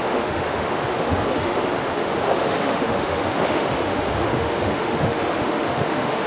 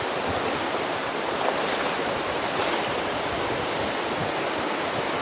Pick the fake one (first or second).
first